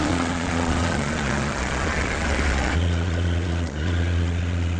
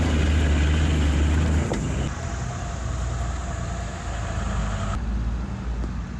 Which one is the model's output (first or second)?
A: first